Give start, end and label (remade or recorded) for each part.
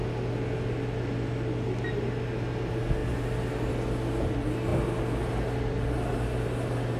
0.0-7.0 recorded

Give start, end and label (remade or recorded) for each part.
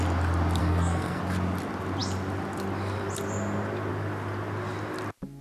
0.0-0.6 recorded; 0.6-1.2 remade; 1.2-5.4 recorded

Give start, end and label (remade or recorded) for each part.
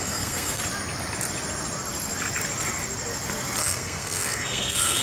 0.0-0.6 remade; 0.6-3.6 recorded; 3.6-5.0 remade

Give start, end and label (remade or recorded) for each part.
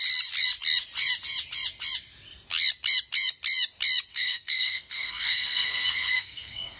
0.0-4.1 recorded; 4.1-6.8 remade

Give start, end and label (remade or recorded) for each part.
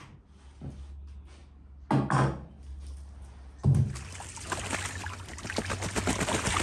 0.0-6.6 recorded